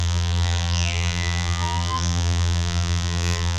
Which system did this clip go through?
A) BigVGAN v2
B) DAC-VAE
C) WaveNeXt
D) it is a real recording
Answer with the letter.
A